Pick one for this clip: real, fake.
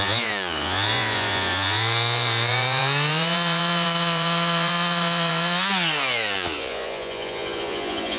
fake